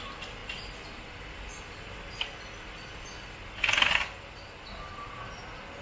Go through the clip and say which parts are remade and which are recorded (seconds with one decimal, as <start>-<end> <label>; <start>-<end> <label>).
0.0-5.8 recorded